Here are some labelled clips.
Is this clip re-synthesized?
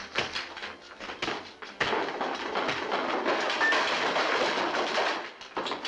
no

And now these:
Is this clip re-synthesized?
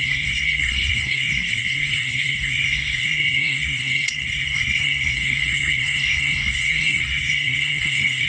yes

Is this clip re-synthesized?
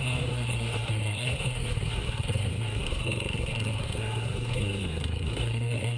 yes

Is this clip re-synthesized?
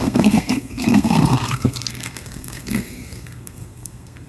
yes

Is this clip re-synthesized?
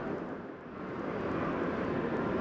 no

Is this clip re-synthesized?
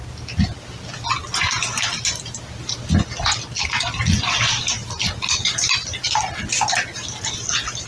no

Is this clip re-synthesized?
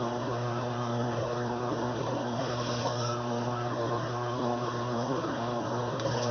yes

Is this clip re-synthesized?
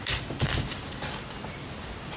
no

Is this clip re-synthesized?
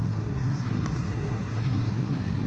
yes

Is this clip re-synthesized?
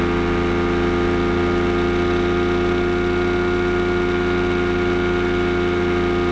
no